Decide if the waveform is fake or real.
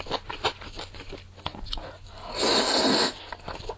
real